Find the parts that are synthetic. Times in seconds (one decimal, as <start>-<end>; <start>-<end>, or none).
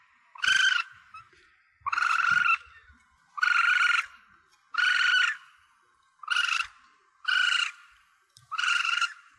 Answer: 7.8-9.4